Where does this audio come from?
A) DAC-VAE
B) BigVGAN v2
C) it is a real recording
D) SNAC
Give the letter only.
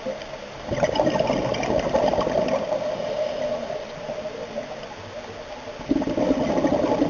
C